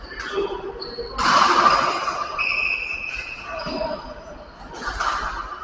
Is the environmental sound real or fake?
real